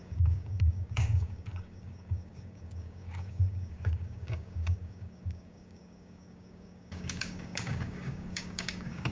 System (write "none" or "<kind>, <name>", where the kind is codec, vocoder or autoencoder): codec, DAC